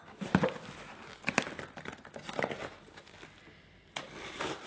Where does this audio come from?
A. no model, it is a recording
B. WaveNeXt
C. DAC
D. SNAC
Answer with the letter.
A